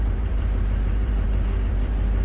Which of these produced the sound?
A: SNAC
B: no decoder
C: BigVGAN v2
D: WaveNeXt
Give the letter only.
C